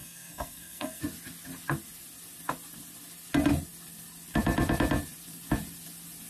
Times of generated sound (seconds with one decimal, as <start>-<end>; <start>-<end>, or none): 0.0-1.0